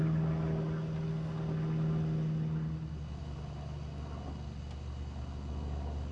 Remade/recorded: recorded